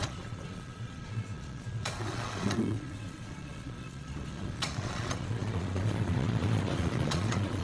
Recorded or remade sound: remade